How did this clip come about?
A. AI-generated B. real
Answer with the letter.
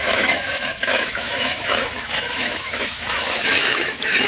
A